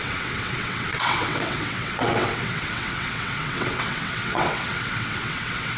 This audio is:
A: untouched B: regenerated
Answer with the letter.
B